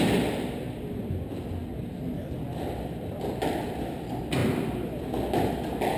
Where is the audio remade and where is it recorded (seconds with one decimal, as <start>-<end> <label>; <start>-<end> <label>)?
0.0-6.0 recorded

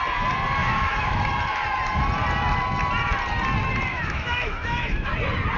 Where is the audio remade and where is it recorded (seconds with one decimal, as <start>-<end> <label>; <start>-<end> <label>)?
0.0-0.6 recorded; 0.6-1.2 remade; 1.2-3.9 recorded; 3.9-5.1 remade; 5.1-5.6 recorded